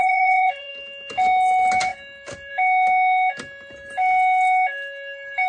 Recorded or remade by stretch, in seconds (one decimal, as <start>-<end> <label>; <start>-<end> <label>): 0.0-0.7 remade; 0.7-5.5 recorded